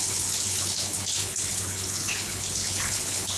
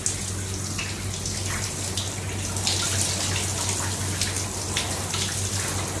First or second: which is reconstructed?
first